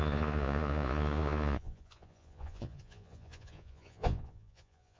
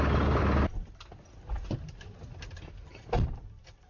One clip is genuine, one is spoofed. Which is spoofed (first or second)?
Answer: first